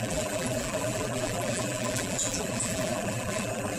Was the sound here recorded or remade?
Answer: remade